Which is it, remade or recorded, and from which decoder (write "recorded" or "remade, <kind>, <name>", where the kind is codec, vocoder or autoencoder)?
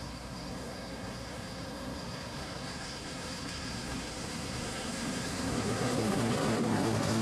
remade, codec, SNAC